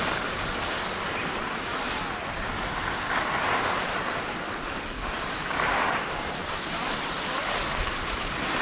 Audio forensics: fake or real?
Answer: real